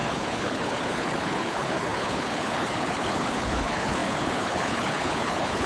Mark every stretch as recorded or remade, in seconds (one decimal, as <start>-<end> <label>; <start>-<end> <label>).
0.0-5.7 remade